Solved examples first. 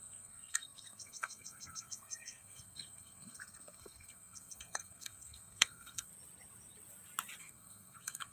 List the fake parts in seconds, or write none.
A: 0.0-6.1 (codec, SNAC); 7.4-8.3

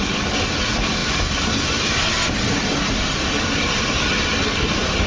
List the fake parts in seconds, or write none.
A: none

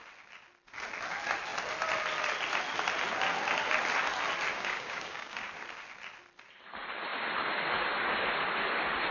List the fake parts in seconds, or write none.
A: 4.5-5.5 (codec, DAC)

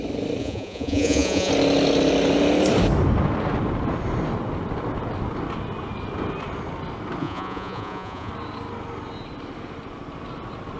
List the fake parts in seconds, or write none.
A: 0.4-1.5 (vocoder, Vocos); 7.2-8.3

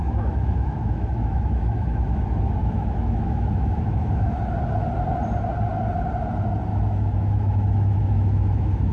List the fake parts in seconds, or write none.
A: 0.0-2.2 (autoencoder, DAC-VAE); 2.6-4.4; 6.7-8.9